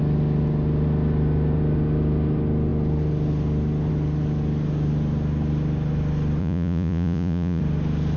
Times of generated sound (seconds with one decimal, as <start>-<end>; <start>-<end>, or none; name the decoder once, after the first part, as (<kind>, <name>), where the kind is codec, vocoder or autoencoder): 6.4-7.6 (vocoder, Vocos)